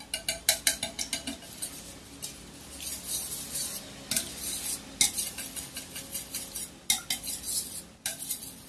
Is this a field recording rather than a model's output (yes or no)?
yes